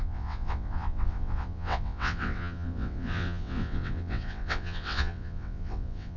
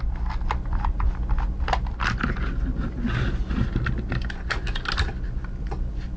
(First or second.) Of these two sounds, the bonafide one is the second